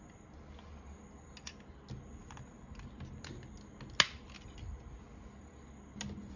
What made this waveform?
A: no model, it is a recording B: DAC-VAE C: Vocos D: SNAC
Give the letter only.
A